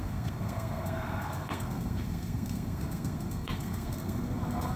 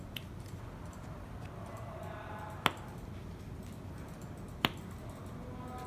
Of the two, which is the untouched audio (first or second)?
second